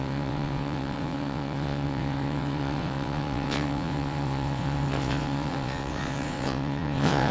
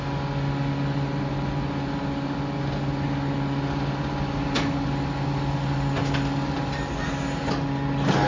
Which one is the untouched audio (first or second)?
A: second